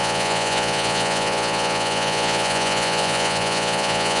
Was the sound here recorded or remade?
remade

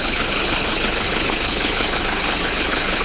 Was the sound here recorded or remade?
remade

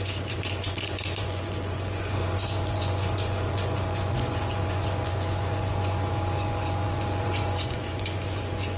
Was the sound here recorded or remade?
remade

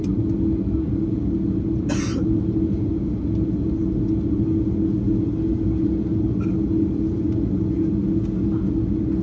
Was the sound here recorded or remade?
recorded